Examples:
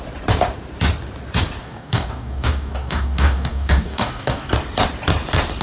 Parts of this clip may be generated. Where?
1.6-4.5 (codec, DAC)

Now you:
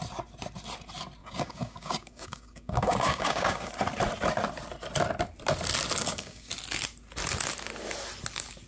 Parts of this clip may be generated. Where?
1.2-3.7 (codec, DAC); 6.0-6.5

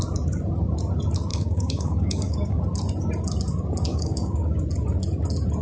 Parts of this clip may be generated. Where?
1.3-2.6 (codec, DAC); 3.9-4.6

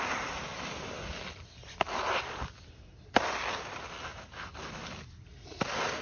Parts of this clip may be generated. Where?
none

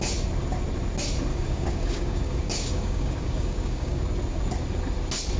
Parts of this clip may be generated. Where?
1.3-4.0 (codec, DAC)

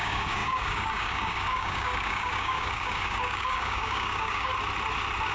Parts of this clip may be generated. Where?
0.0-4.5 (codec, DAC)

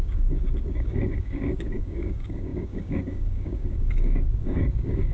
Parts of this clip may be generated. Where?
0.0-5.1 (codec, DAC)